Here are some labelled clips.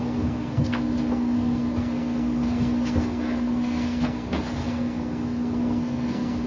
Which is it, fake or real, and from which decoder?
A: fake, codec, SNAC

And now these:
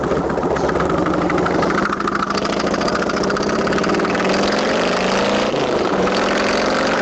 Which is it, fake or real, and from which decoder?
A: real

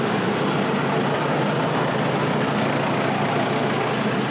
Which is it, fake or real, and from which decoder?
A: real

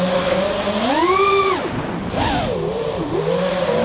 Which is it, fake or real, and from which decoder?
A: real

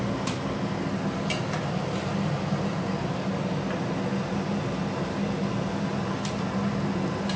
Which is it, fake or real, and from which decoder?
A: real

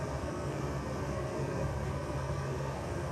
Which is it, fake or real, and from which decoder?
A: fake, codec, SNAC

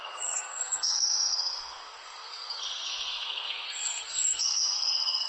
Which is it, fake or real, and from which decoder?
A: fake, codec, SNAC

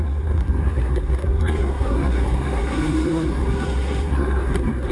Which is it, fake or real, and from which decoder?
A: fake, codec, SNAC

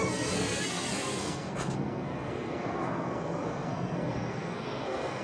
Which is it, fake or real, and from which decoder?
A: fake, codec, SNAC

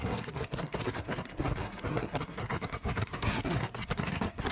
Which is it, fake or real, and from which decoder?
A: fake, codec, SNAC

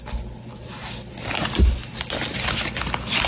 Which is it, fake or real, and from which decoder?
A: real